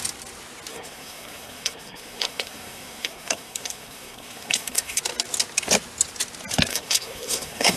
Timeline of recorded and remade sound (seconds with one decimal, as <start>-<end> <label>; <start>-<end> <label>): 0.0-0.7 recorded; 0.7-5.0 remade; 5.0-6.7 recorded; 6.7-7.8 remade

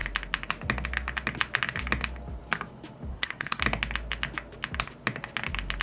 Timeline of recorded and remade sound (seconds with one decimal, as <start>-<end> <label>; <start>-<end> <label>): 0.0-3.1 recorded; 3.1-3.6 remade; 3.6-5.8 recorded

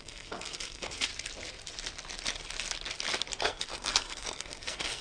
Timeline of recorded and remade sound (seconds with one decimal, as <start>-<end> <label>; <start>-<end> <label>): 0.0-1.1 remade; 1.1-3.4 recorded; 3.4-5.0 remade

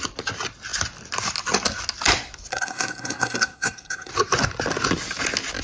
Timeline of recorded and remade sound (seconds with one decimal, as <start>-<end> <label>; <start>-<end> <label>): 0.0-2.5 recorded; 2.5-4.1 remade; 4.1-5.6 recorded

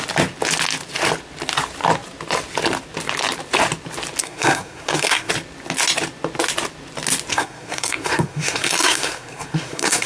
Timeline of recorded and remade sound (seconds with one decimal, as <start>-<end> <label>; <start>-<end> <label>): 0.0-4.2 recorded; 4.2-5.3 remade; 5.3-7.3 recorded; 7.3-10.1 remade

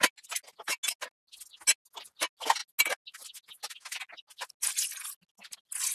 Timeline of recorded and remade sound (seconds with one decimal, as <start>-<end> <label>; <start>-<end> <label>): 0.0-5.9 recorded

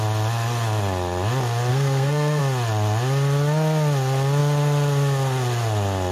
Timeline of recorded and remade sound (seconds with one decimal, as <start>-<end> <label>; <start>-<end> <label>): 0.0-1.7 recorded; 1.7-2.4 remade; 2.4-6.1 recorded